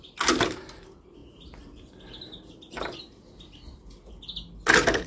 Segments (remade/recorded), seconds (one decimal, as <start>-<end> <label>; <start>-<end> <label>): 0.0-5.1 recorded